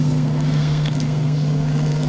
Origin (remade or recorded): remade